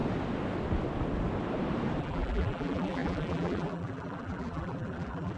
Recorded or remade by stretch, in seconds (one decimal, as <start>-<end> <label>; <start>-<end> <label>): 0.0-2.0 recorded; 2.0-5.4 remade